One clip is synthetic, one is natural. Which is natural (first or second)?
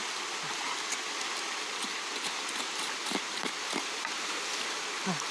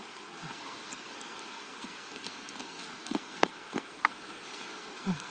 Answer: first